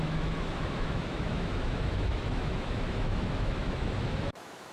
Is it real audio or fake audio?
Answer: fake